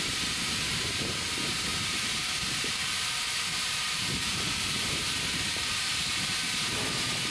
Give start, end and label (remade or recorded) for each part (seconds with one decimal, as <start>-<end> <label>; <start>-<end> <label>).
0.0-7.3 remade